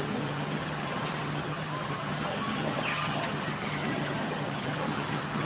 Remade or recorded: remade